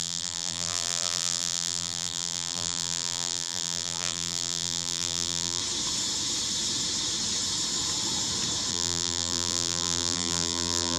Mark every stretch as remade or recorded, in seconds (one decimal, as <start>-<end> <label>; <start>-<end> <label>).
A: 0.0-5.6 remade; 5.6-8.7 recorded; 8.7-11.0 remade